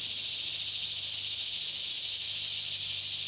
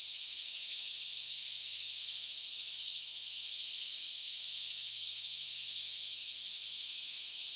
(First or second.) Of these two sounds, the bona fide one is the first